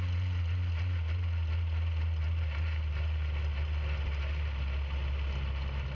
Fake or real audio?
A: real